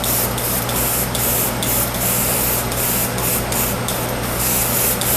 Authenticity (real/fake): real